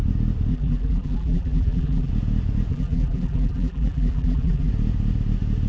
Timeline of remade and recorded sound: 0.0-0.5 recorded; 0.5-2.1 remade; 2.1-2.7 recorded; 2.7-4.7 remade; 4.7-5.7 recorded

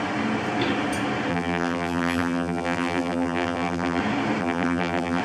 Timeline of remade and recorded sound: 0.0-1.3 recorded; 1.3-4.0 remade; 4.0-4.4 recorded; 4.4-5.2 remade

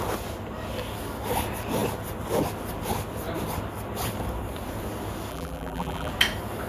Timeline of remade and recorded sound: 0.0-5.3 recorded; 5.3-6.1 remade; 6.1-6.7 recorded

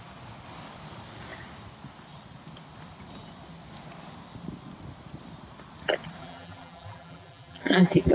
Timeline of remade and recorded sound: 0.0-6.2 recorded; 6.2-8.1 remade

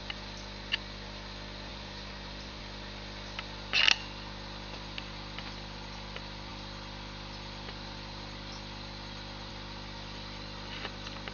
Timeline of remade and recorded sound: 0.0-1.7 recorded; 1.7-2.6 remade; 2.6-11.3 recorded